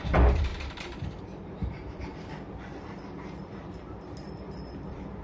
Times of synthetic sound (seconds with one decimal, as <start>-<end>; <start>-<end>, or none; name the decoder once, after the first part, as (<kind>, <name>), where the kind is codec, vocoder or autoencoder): 0.0-2.1 (vocoder, BigVGAN v2); 2.7-5.2